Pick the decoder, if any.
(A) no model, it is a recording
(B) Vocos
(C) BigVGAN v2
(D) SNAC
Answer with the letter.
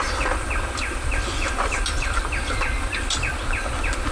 A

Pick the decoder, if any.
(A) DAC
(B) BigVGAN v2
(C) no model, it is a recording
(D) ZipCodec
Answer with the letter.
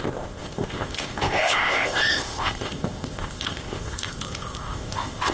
D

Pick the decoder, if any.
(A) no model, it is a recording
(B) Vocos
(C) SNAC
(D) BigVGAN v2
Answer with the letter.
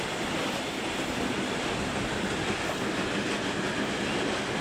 A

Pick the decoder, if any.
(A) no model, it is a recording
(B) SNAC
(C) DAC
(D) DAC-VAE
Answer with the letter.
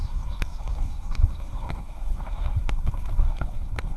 B